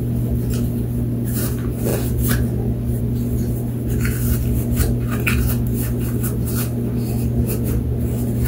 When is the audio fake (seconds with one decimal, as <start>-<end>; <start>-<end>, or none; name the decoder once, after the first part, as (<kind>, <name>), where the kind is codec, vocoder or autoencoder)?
none